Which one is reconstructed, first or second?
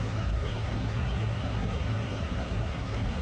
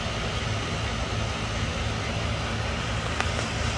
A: first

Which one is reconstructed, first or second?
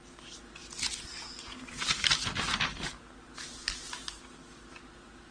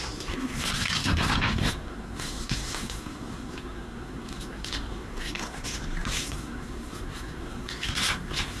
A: second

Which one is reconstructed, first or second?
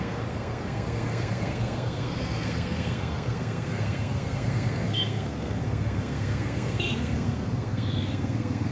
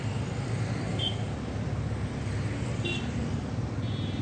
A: first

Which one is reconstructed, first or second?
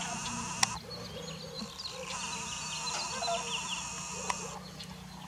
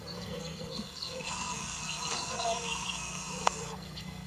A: second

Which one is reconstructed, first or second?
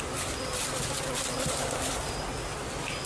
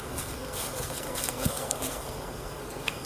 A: second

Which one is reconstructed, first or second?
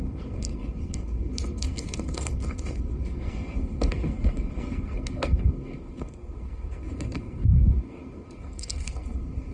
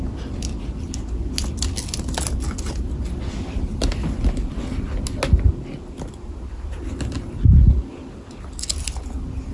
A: first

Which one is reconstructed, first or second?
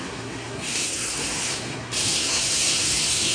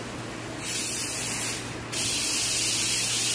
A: first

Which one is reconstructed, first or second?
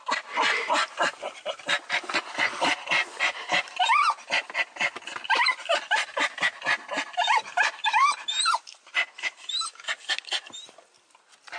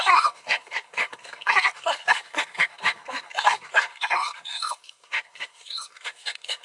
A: second